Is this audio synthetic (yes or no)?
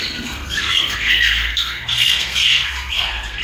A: yes